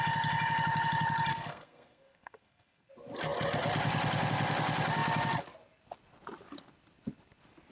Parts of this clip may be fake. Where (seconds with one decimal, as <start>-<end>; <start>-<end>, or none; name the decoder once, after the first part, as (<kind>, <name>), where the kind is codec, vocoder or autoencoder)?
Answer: 1.3-2.9 (codec, SNAC)